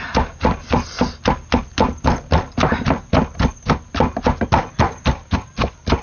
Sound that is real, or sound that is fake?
real